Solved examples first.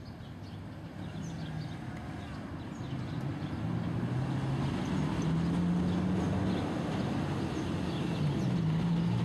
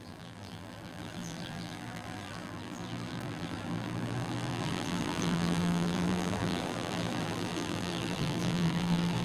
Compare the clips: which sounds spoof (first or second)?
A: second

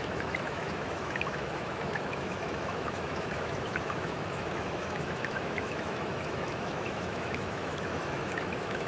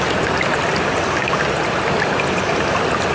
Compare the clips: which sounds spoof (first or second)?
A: first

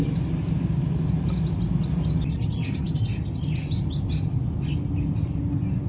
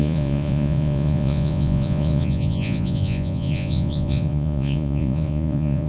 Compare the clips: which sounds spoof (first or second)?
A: second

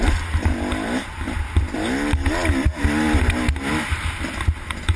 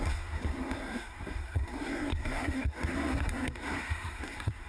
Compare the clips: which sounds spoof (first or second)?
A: second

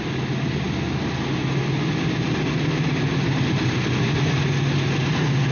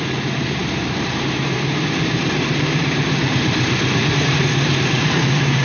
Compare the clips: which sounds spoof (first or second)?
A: second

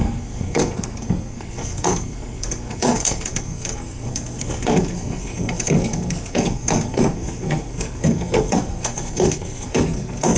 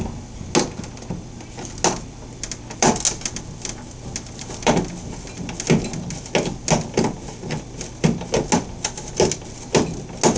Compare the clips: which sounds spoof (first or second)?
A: first